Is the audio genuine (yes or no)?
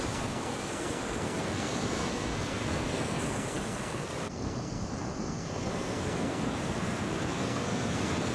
no